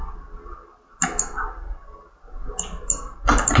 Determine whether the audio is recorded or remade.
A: recorded